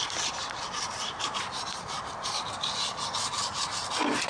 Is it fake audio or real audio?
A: real